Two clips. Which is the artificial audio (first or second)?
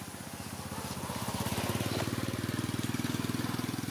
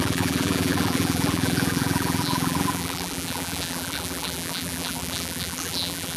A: second